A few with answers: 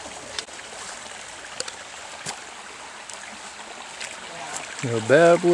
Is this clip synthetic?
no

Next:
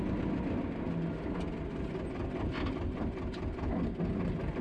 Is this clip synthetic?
no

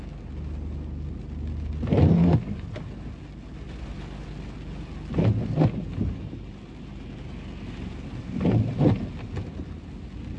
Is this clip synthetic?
no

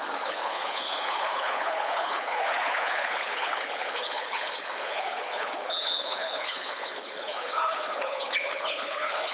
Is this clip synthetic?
yes